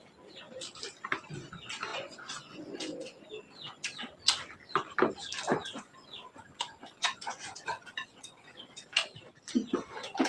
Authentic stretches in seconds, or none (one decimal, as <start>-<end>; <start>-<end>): 0.0-1.9; 3.3-5.6; 8.6-10.3